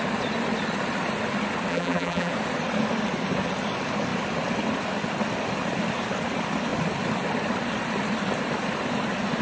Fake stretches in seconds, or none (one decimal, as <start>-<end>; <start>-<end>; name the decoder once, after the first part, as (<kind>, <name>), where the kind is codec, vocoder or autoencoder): 1.7-2.3 (vocoder, BigVGAN v2)